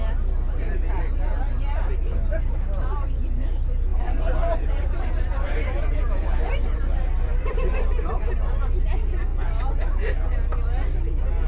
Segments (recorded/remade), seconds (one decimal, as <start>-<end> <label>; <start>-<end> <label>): 0.0-3.9 recorded; 3.9-8.3 remade; 8.3-11.5 recorded